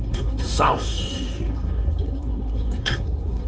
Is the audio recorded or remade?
remade